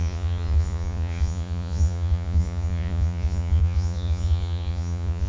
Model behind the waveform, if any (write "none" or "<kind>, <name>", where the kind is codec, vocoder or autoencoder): vocoder, Vocos